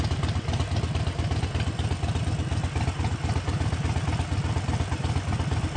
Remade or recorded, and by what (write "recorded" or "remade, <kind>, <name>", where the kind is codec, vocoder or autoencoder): recorded